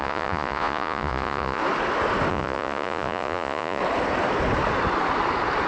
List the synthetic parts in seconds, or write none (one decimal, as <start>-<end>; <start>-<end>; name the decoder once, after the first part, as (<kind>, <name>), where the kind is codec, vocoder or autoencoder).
0.0-1.6 (vocoder, Vocos); 2.3-3.8

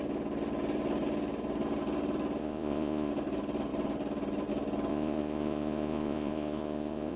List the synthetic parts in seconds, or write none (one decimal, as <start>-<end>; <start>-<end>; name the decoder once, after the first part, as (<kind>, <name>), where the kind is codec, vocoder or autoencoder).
2.4-3.1 (vocoder, Vocos); 4.9-7.2

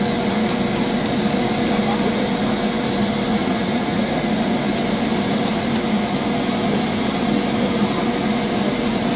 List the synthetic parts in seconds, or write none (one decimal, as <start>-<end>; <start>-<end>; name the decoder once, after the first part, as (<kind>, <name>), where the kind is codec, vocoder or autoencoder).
3.3-4.3 (vocoder, Vocos)

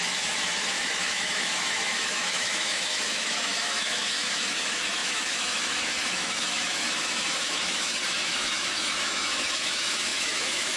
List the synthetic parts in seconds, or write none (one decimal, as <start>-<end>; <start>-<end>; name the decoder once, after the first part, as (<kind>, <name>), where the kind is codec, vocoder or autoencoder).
0.0-10.8 (autoencoder, DAC-VAE)

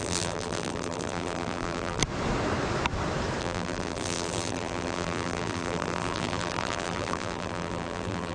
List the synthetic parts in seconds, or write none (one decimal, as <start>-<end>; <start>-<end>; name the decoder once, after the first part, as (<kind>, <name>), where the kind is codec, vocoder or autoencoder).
0.0-2.0 (vocoder, BigVGAN v2); 3.4-8.3